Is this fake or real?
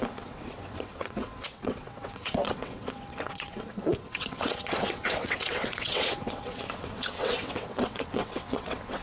fake